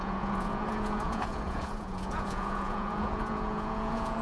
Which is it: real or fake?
fake